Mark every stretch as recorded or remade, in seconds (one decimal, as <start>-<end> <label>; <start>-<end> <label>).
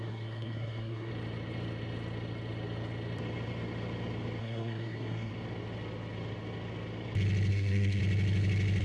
0.0-1.1 remade; 1.1-4.4 recorded; 4.4-5.3 remade; 5.3-7.5 recorded; 7.5-8.0 remade; 8.0-8.8 recorded